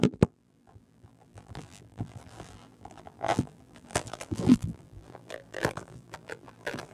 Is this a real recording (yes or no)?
no